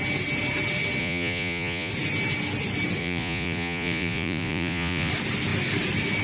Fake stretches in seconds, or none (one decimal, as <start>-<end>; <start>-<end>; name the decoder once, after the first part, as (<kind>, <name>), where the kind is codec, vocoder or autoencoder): 1.0-1.9 (vocoder, Vocos); 3.0-5.1